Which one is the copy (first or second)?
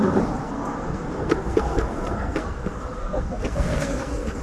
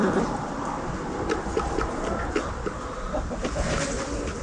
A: first